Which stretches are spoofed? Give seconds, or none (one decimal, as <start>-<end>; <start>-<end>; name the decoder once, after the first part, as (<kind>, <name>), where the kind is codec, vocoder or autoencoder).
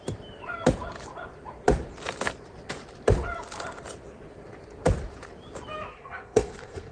5.9-6.9 (codec, SNAC)